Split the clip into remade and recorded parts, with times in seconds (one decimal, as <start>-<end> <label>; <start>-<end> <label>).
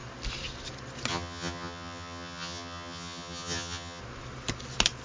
0.0-1.1 recorded; 1.1-4.0 remade; 4.0-5.0 recorded